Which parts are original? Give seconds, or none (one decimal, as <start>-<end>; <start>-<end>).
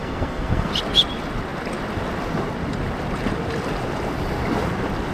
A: 0.7-5.1